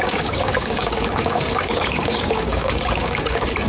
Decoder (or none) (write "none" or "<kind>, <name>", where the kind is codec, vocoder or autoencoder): codec, DAC